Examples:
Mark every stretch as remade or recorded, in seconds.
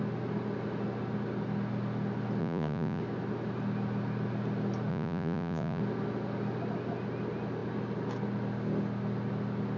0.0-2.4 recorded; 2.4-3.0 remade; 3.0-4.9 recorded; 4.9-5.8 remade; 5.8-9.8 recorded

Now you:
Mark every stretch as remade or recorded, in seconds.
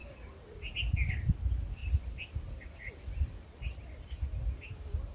0.0-1.4 remade; 1.4-1.8 recorded; 1.8-5.1 remade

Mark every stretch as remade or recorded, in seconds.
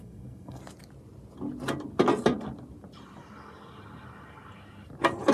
0.0-0.6 remade; 0.6-5.3 recorded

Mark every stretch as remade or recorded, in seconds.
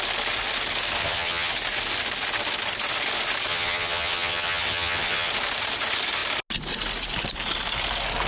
0.0-1.0 recorded; 1.0-1.5 remade; 1.5-3.5 recorded; 3.5-5.3 remade; 5.3-8.3 recorded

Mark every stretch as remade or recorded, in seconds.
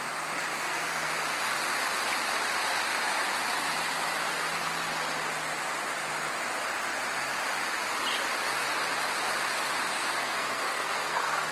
0.0-0.5 recorded; 0.5-1.1 remade; 1.1-9.9 recorded; 9.9-11.5 remade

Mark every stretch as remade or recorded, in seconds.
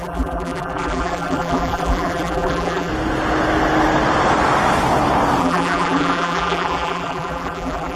0.0-2.9 remade; 2.9-5.4 recorded; 5.4-8.0 remade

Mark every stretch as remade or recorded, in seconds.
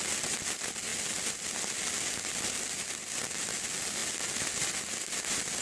0.0-5.6 recorded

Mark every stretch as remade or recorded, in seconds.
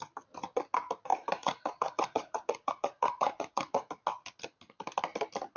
0.0-1.1 recorded; 1.1-3.9 remade; 3.9-5.6 recorded